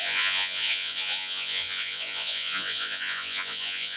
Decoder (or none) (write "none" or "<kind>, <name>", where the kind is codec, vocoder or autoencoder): vocoder, Vocos